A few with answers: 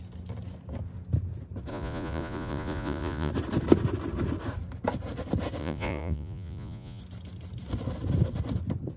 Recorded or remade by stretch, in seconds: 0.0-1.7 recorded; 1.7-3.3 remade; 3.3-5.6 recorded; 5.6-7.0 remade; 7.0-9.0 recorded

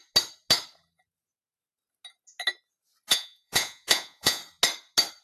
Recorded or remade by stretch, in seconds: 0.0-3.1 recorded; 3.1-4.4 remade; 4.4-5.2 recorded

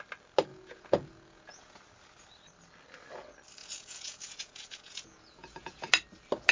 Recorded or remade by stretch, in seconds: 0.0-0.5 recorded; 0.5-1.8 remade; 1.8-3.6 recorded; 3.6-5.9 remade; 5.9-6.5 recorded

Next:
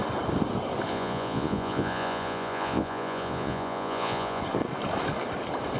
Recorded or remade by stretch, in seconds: 0.0-0.9 recorded; 0.9-4.4 remade; 4.4-5.8 recorded